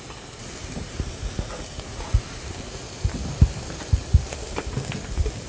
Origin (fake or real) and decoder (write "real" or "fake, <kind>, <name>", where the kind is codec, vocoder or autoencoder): real